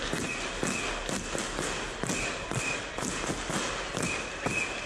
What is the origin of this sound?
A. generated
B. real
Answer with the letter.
B